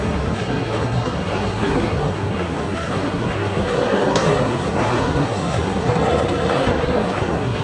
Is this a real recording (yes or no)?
no